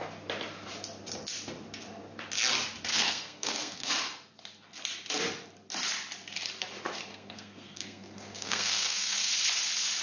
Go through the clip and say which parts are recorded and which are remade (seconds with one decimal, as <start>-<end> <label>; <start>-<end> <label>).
0.0-2.9 recorded; 2.9-3.9 remade; 3.9-7.1 recorded; 7.1-9.3 remade; 9.3-10.0 recorded